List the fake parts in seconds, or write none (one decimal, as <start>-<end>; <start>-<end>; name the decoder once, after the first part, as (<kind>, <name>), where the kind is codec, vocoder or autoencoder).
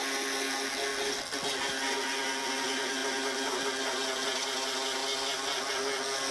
none